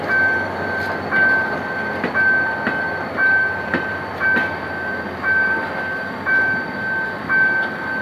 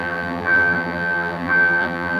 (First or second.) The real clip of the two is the first